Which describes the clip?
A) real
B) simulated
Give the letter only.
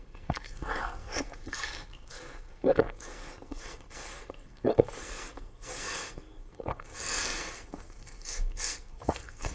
B